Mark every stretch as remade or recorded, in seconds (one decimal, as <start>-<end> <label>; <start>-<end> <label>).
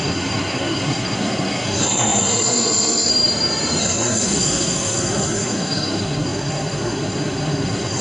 0.0-3.1 remade; 3.1-3.8 recorded; 3.8-8.0 remade